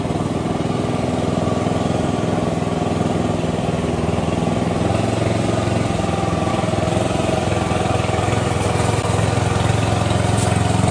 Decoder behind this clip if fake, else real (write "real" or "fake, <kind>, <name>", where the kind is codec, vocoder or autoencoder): real